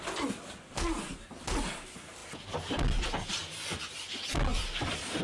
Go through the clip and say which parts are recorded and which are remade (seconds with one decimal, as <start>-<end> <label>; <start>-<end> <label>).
0.0-5.2 recorded